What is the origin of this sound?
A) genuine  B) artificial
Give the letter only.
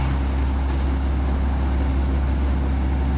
A